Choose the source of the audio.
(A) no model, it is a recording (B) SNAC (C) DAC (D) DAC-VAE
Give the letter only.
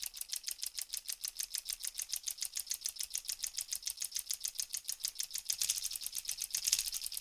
A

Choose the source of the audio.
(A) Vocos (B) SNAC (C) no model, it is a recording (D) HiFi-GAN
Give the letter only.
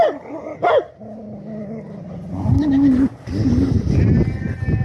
C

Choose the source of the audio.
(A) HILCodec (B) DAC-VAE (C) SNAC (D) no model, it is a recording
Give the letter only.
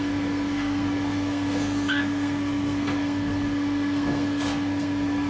C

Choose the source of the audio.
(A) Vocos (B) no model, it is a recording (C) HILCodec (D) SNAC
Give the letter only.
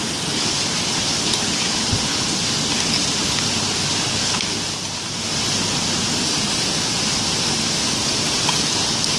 B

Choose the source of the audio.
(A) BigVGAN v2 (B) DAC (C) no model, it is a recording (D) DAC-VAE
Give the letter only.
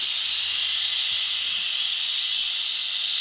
C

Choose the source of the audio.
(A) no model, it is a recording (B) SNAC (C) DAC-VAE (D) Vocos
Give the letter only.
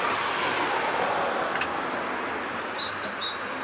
A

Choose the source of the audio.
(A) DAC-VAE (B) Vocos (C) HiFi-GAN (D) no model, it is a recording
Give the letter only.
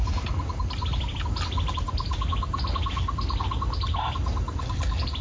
D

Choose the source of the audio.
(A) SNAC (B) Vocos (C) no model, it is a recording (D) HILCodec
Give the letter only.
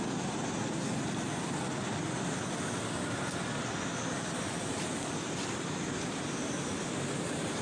C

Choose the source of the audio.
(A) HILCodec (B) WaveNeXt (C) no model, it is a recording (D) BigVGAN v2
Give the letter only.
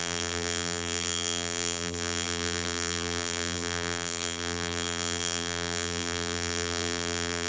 D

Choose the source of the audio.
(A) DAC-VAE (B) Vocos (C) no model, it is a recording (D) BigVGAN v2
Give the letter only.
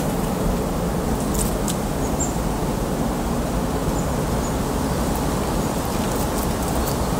C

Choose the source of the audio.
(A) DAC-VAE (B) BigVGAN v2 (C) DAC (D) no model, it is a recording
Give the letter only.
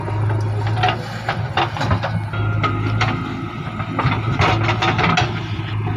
D